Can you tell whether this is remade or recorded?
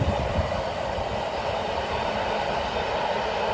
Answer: recorded